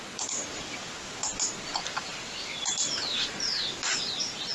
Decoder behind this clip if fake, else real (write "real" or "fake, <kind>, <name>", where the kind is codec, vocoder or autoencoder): real